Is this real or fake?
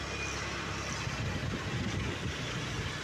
real